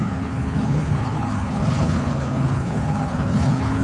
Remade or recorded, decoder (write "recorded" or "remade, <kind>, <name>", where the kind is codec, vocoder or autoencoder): remade, codec, HILCodec